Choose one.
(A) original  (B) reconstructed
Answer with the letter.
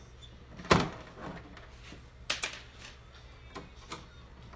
A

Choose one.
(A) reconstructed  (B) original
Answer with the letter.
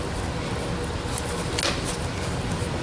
B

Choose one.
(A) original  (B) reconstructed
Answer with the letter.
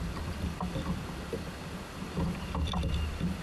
A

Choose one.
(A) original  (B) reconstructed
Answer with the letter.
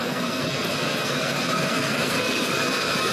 B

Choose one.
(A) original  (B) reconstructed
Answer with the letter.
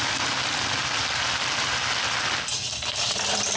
A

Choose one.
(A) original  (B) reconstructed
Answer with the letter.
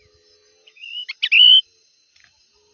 A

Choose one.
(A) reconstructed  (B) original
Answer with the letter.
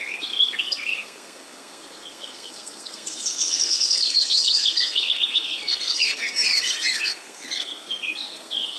A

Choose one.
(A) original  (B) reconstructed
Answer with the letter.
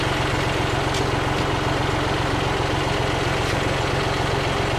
A